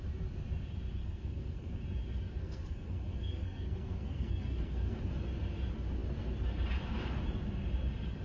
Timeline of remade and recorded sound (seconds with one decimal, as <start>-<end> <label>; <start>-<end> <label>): 0.0-1.0 recorded; 1.0-1.7 remade; 1.7-2.4 recorded; 2.4-5.0 remade; 5.0-8.2 recorded